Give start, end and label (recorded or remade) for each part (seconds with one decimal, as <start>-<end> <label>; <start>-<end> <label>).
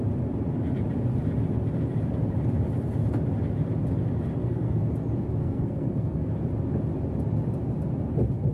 0.0-4.4 recorded; 4.4-4.9 remade; 4.9-5.4 recorded; 5.4-6.3 remade; 6.3-8.5 recorded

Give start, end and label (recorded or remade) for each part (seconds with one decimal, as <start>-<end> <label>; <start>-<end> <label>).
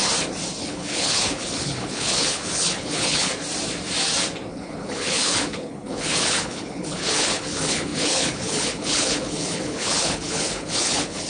0.0-0.6 recorded; 0.6-3.3 remade; 3.3-4.5 recorded; 4.5-11.3 remade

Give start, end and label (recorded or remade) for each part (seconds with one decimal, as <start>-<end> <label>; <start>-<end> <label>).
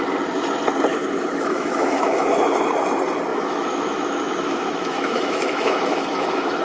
0.0-0.9 recorded; 0.9-2.6 remade; 2.6-3.3 recorded; 3.3-6.6 remade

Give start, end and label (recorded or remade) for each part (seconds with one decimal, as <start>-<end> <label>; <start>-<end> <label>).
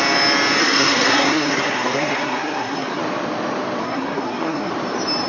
0.0-0.6 recorded; 0.6-3.0 remade; 3.0-3.8 recorded; 3.8-4.7 remade; 4.7-5.3 recorded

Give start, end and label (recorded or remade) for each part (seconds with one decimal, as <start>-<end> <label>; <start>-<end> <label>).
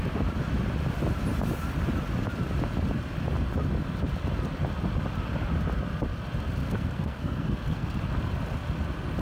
0.0-6.6 recorded; 6.6-8.0 remade; 8.0-9.2 recorded